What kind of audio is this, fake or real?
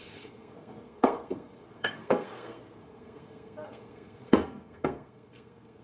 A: fake